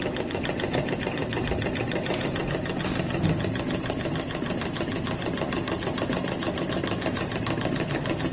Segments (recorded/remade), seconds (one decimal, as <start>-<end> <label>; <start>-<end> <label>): 0.0-8.3 recorded